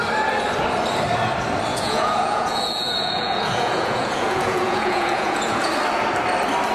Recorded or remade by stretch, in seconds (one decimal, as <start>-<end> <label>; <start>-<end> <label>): 0.0-1.7 recorded; 1.7-5.7 remade; 5.7-6.7 recorded